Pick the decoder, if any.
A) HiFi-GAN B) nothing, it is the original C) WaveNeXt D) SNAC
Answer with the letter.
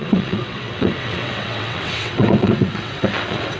C